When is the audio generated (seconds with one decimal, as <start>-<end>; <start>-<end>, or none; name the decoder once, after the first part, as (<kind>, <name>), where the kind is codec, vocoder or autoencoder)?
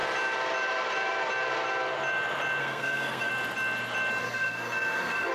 2.6-3.3 (codec, SNAC); 4.2-5.3